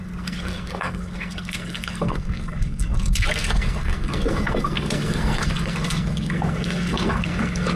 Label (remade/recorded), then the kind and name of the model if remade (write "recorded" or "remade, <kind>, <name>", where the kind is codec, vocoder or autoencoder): remade, codec, SNAC